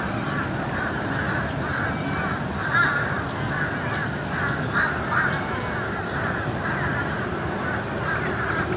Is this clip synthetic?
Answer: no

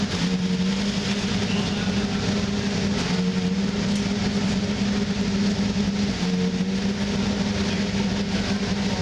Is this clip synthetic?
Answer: no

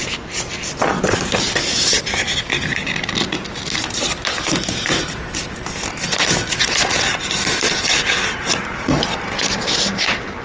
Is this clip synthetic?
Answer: no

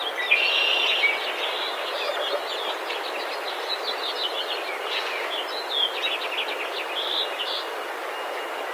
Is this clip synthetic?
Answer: no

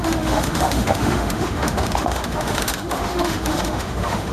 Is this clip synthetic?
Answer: yes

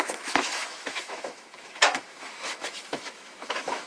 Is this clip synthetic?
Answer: yes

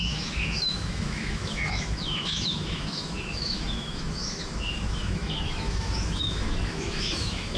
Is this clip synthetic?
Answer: yes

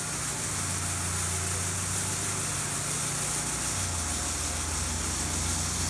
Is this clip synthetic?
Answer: no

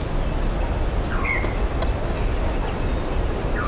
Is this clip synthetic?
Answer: no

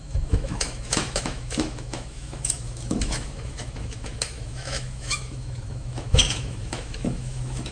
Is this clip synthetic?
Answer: yes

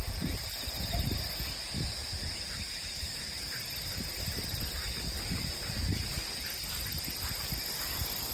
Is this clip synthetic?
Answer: no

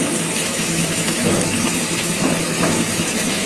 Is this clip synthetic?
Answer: yes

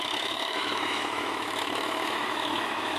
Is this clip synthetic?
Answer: yes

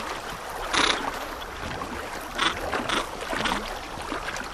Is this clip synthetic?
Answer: no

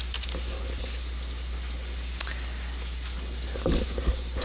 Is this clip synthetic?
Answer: no